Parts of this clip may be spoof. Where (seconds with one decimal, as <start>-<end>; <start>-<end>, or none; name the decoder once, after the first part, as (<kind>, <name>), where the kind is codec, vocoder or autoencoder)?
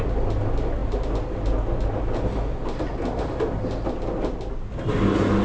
none